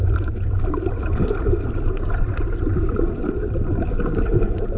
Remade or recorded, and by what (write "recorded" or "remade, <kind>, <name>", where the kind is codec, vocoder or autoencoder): recorded